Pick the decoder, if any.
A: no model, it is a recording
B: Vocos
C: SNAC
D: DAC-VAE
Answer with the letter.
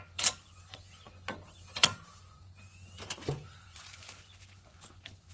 B